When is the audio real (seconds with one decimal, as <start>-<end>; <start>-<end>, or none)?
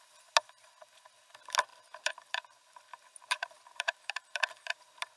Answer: 0.0-1.7; 4.8-5.2